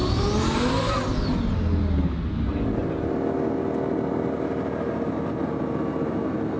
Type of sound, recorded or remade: recorded